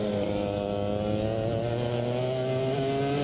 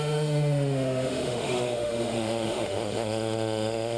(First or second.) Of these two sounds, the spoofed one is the second